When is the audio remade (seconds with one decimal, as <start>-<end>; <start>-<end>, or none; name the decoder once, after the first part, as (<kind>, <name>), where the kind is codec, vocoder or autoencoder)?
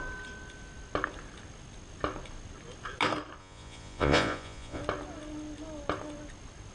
3.4-4.8 (vocoder, Vocos)